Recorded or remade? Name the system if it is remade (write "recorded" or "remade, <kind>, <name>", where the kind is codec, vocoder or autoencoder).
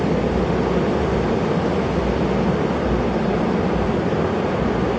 recorded